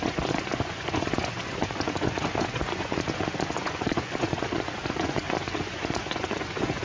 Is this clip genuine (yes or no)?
no